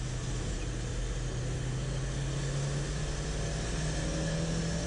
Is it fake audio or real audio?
real